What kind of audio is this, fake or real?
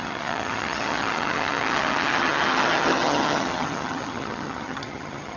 fake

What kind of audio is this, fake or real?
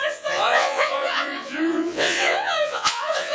fake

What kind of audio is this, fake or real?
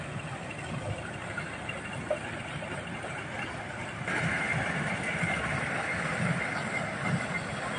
fake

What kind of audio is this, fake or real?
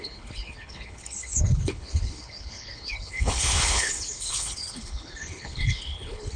fake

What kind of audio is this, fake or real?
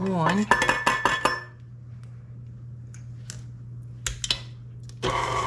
real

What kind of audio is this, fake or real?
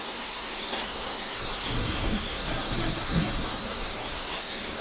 fake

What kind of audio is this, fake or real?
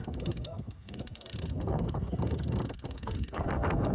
fake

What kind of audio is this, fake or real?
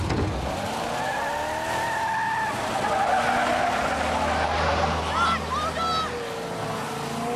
real